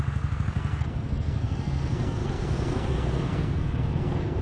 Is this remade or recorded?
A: remade